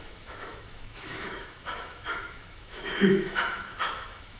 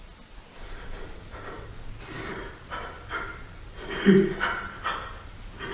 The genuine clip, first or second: second